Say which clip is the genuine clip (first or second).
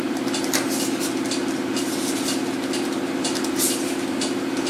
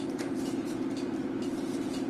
first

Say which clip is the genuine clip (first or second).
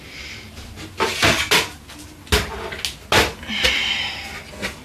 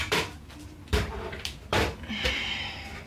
first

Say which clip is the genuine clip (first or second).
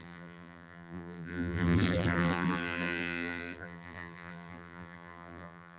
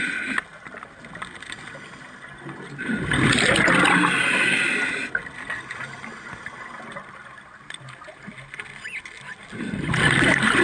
second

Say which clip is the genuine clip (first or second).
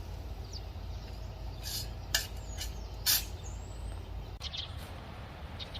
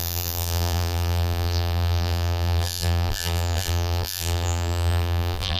first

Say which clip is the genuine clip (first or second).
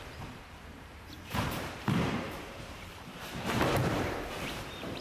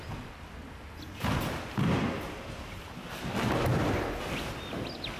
second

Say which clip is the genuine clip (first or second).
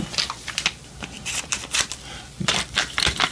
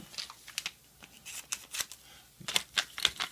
second